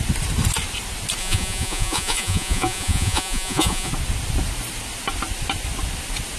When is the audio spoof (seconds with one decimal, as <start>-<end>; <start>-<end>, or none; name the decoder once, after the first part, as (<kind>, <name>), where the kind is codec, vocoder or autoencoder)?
1.2-3.9 (vocoder, Vocos)